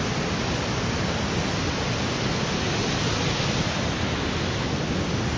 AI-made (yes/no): no